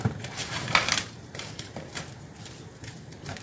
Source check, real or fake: fake